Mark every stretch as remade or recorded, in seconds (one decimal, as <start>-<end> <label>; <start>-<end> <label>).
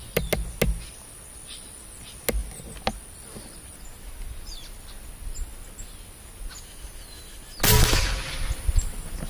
0.0-9.3 recorded